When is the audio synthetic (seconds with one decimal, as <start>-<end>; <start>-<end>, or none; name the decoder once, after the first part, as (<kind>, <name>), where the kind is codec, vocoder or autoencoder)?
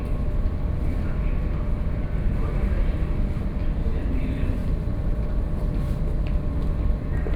4.6-6.0 (vocoder, BigVGAN v2)